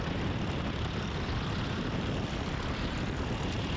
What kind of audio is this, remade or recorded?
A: recorded